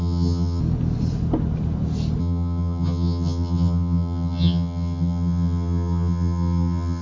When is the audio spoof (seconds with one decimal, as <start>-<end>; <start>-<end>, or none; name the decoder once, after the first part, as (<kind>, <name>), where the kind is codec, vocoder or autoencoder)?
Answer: 0.0-0.6 (vocoder, HiFi-GAN); 2.2-7.0